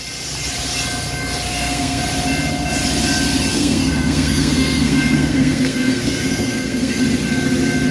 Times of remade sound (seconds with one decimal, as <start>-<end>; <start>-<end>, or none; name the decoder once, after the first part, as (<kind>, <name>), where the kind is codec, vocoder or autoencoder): 1.5-2.0 (codec, SNAC); 3.5-7.0